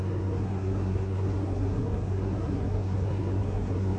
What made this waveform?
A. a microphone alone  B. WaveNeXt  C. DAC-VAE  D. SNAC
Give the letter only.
D